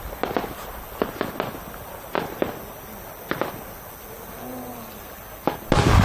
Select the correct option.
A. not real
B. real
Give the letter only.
B